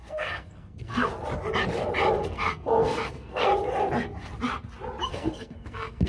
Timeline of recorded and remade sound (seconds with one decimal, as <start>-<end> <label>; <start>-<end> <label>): 0.0-1.1 remade; 1.1-2.2 recorded; 2.2-3.5 remade; 3.5-5.1 recorded; 5.1-6.1 remade